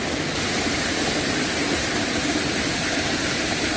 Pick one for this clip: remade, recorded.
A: recorded